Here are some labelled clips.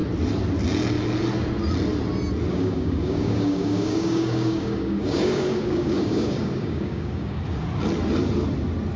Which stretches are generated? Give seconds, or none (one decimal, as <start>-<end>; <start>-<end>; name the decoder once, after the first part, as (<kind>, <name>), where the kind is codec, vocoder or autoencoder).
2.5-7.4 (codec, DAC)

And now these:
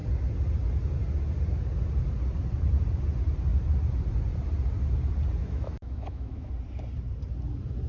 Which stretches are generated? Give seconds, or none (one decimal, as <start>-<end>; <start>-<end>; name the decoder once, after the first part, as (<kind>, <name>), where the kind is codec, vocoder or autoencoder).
5.4-6.5 (autoencoder, DAC-VAE)

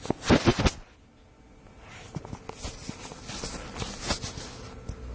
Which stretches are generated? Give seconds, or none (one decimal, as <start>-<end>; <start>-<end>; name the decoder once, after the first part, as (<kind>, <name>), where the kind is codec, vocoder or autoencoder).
none

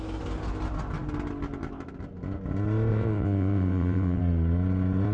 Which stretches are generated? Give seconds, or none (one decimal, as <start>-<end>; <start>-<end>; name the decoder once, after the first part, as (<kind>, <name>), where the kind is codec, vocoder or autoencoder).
2.9-4.2 (vocoder, WaveNeXt)